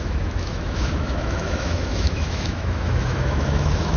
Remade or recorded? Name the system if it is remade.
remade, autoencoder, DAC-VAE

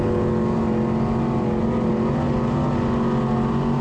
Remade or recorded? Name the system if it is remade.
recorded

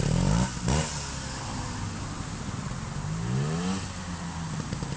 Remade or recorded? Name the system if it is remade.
recorded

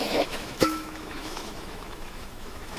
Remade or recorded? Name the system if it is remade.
remade, autoencoder, DAC-VAE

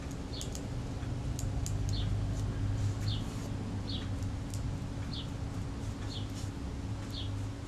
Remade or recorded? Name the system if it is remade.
recorded